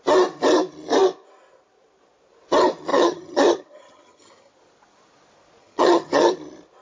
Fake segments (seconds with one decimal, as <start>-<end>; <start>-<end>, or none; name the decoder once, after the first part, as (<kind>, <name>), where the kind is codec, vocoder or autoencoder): 2.9-4.5 (vocoder, HiFi-GAN); 5.6-6.3